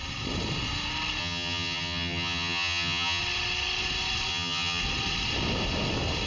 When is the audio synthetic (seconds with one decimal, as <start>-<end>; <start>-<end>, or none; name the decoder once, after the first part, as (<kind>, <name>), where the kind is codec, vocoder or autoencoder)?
1.2-3.2 (vocoder, HiFi-GAN); 4.3-4.8